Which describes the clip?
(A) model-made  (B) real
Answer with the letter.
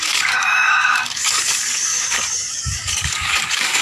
A